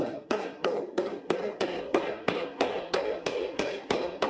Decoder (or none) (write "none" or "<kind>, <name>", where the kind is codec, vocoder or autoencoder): codec, SNAC